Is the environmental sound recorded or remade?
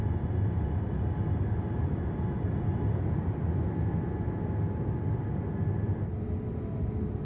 recorded